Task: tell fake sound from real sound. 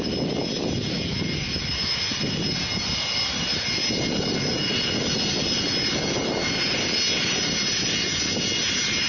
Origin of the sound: real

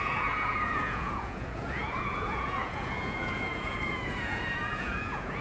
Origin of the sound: fake